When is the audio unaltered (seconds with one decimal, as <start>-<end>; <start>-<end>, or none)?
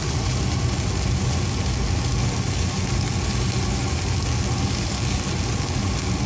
0.0-6.3